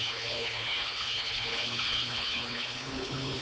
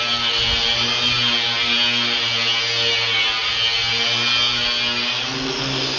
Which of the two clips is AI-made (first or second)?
first